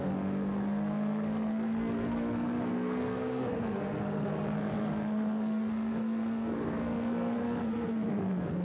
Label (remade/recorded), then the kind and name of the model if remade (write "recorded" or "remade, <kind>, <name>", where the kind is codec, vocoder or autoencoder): remade, codec, SNAC